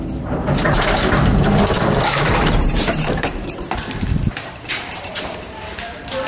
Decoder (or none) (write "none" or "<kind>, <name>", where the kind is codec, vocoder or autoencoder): vocoder, BigVGAN v2